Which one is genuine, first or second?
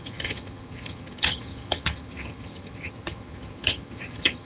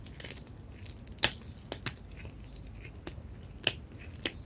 second